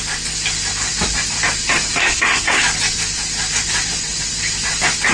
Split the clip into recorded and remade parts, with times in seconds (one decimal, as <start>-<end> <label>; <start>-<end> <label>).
0.0-2.0 recorded; 2.0-2.6 remade; 2.6-5.1 recorded

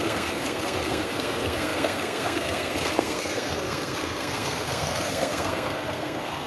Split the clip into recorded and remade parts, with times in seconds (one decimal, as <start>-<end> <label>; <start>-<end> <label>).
0.0-6.5 remade

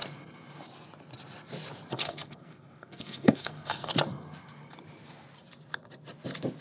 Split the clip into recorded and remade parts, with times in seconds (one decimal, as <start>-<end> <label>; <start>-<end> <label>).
0.0-1.9 recorded; 1.9-3.9 remade; 3.9-6.6 recorded

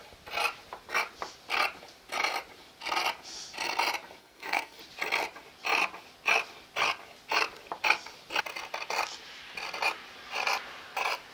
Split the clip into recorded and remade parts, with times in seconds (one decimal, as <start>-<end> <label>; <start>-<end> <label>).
0.0-4.2 recorded; 4.2-4.8 remade; 4.8-11.3 recorded